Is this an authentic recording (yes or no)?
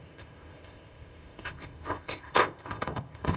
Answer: no